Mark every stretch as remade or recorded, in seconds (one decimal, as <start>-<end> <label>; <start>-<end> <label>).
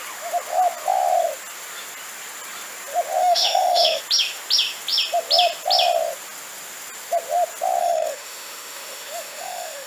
0.0-3.2 recorded; 3.2-4.0 remade; 4.0-7.8 recorded; 7.8-9.9 remade